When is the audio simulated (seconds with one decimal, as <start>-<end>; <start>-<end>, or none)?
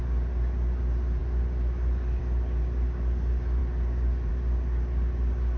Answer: none